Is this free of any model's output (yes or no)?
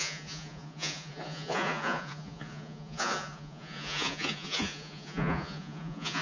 no